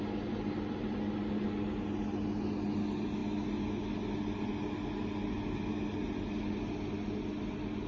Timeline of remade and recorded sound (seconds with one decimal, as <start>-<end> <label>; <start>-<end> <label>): 0.0-7.9 recorded